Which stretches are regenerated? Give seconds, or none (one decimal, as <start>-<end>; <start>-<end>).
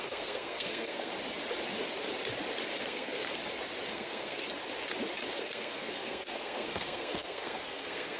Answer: 0.0-1.1; 2.8-3.4; 3.9-4.4; 5.4-8.2